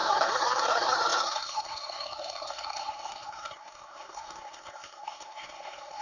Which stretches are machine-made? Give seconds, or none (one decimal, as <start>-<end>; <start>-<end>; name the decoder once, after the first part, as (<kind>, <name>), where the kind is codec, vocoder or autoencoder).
0.0-6.0 (codec, SNAC)